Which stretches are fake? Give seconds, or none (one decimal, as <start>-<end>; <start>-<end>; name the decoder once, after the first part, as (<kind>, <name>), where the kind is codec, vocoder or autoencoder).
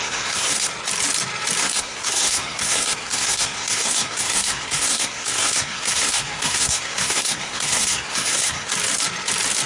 0.0-0.7 (codec, SNAC); 1.6-8.7